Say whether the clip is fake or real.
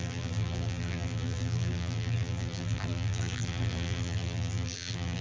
fake